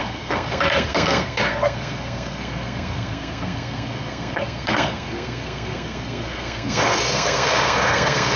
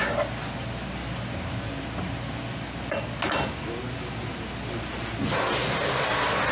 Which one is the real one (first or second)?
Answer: second